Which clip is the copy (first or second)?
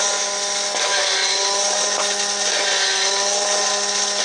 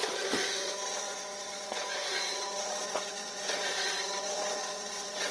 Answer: second